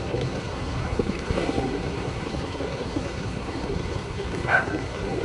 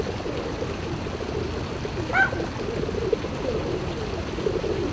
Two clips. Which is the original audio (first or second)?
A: second